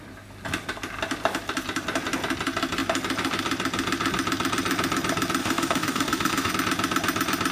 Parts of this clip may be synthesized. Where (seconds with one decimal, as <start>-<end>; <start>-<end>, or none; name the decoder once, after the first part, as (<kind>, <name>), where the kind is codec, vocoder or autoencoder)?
5.4-6.5 (autoencoder, DAC-VAE)